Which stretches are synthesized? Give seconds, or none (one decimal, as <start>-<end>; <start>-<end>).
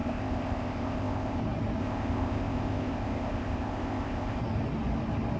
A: 0.0-1.4; 1.8-4.4